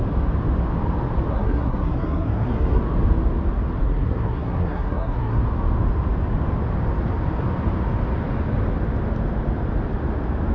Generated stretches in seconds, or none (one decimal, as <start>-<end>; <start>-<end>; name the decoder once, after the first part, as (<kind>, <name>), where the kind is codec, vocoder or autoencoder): 1.3-2.8 (codec, SNAC); 3.8-5.4